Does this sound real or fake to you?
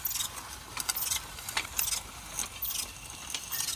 real